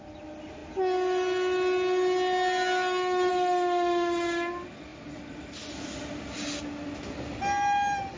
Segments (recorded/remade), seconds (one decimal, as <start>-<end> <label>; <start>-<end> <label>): 0.0-8.2 recorded